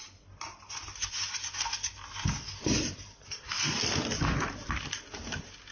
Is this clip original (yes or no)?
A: yes